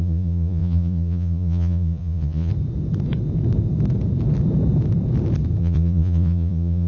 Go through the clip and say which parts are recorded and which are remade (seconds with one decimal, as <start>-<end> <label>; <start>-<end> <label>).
0.0-2.5 remade; 2.5-5.6 recorded; 5.6-6.9 remade